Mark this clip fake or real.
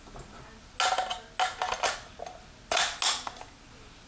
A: real